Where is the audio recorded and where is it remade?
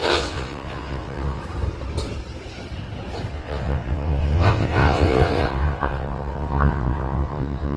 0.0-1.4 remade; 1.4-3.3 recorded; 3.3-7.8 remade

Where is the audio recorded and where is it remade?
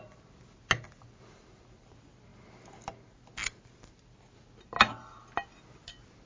0.0-6.3 recorded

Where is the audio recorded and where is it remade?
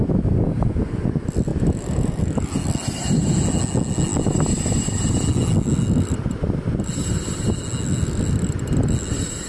0.0-9.5 recorded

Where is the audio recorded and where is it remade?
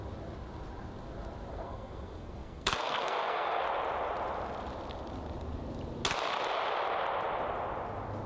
0.0-1.5 recorded; 1.5-3.6 remade; 3.6-8.3 recorded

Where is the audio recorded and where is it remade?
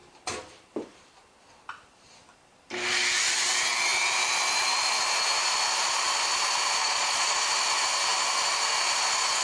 0.0-6.8 recorded; 6.8-7.4 remade; 7.4-9.4 recorded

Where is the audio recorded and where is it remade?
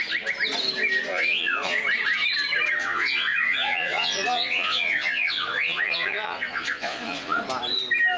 0.0-1.1 recorded; 1.1-1.8 remade; 1.8-2.8 recorded; 2.8-7.4 remade; 7.4-8.2 recorded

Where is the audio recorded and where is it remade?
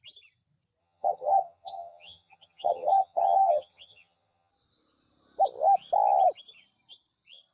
0.0-0.8 recorded; 0.8-4.5 remade; 4.5-7.5 recorded